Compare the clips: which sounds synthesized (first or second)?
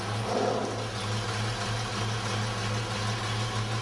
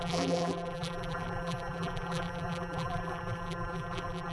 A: second